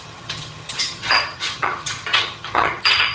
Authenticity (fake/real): fake